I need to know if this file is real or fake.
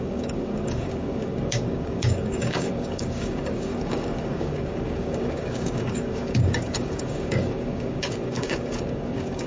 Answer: fake